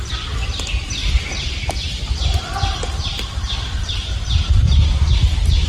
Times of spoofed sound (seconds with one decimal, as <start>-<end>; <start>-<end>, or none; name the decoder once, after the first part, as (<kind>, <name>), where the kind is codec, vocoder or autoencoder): 0.0-5.7 (vocoder, BigVGAN v2)